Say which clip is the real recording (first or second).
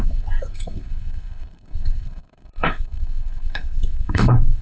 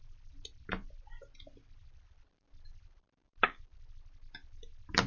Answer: second